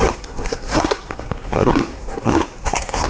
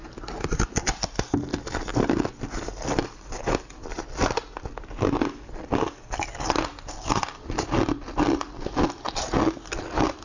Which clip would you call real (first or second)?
second